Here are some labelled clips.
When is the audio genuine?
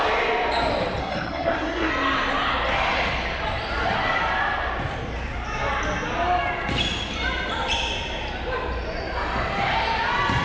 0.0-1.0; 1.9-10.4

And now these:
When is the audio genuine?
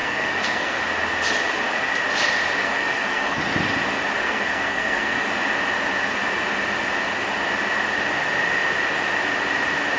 0.8-2.6; 3.4-4.2; 5.3-10.0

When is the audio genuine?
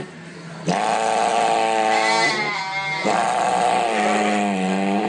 0.0-5.1